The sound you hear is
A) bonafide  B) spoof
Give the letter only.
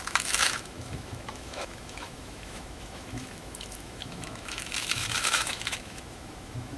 B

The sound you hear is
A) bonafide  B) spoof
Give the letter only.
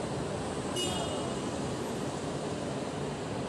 A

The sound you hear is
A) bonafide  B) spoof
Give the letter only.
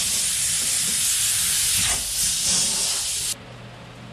A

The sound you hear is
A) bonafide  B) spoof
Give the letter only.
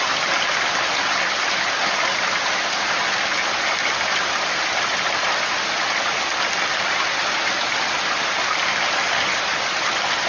A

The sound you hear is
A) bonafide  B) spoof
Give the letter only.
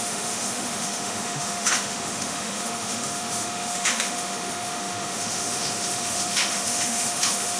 B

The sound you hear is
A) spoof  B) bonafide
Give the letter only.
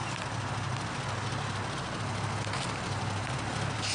B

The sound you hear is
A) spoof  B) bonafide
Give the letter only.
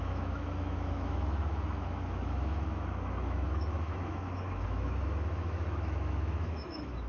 A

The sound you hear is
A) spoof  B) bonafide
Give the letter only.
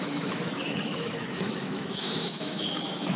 A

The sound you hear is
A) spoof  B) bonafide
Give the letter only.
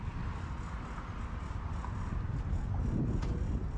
B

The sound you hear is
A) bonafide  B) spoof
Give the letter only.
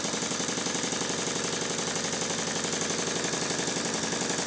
A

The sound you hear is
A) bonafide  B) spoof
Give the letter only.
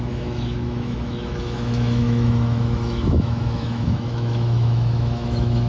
B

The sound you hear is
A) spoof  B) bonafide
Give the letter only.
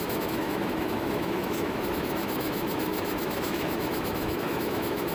A